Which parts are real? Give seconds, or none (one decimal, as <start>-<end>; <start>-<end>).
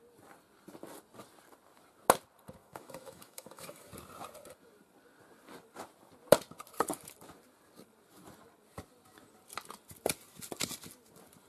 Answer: 0.0-2.6; 3.9-11.5